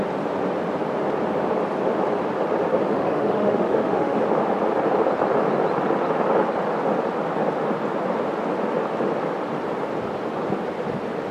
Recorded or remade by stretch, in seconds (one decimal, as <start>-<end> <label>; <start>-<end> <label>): 0.0-2.9 recorded; 2.9-4.2 remade; 4.2-11.3 recorded